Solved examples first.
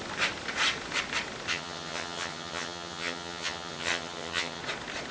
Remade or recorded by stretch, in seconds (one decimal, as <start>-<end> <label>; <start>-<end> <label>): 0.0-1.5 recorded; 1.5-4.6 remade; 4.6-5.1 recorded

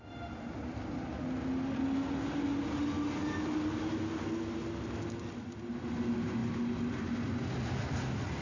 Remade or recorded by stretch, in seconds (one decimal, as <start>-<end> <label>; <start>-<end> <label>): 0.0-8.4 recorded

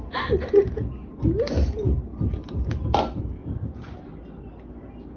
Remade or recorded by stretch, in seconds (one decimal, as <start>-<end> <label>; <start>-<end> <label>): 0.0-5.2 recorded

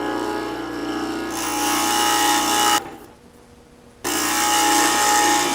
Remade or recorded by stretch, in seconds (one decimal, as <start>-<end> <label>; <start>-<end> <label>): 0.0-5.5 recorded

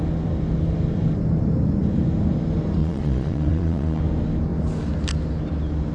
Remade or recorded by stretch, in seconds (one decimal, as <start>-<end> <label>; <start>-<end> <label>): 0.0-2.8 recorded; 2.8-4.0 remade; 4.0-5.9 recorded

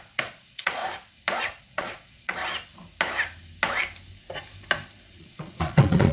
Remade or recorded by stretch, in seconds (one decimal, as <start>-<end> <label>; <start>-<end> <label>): 0.0-0.8 remade; 0.8-1.6 recorded; 1.6-2.4 remade; 2.4-5.2 recorded; 5.2-6.1 remade

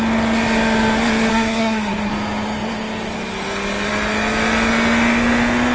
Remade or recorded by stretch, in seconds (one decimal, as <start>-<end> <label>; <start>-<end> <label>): 0.0-1.3 recorded; 1.3-2.1 remade; 2.1-5.7 recorded